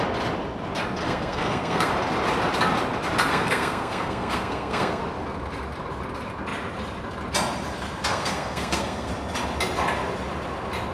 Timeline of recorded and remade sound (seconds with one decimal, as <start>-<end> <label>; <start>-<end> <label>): 0.0-1.0 recorded; 1.0-1.9 remade; 1.9-3.3 recorded; 3.3-5.0 remade; 5.0-8.1 recorded; 8.1-9.1 remade; 9.1-10.9 recorded

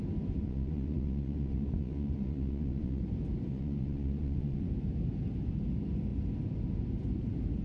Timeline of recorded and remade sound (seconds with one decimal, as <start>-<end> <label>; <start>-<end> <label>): 0.0-0.4 recorded; 0.4-3.0 remade; 3.0-3.5 recorded; 3.5-4.6 remade; 4.6-7.6 recorded

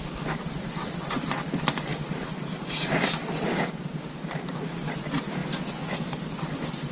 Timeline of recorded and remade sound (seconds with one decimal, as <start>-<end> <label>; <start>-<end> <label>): 0.0-1.9 remade; 1.9-4.1 recorded; 4.1-5.4 remade; 5.4-6.9 recorded